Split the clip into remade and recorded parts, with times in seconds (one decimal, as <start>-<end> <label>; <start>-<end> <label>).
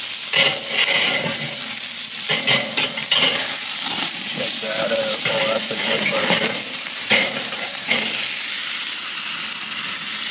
0.0-3.4 recorded; 3.4-8.0 remade; 8.0-10.3 recorded